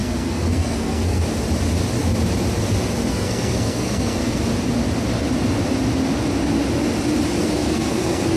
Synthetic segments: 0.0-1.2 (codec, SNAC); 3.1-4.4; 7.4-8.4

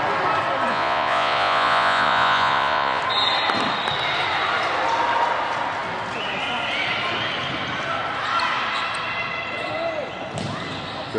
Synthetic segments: 0.7-3.0 (vocoder, Vocos)